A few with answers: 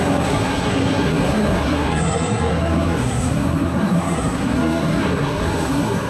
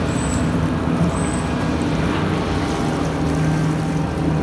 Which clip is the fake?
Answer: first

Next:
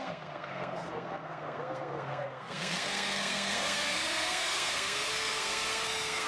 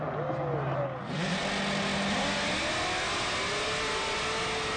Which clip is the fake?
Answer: first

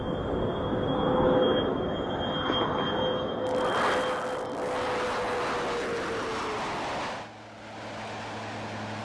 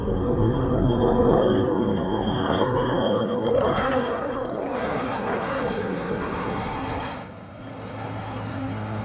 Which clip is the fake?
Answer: second